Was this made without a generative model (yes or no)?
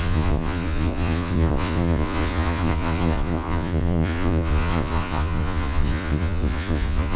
no